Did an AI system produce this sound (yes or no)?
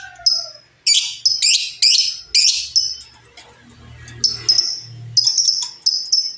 no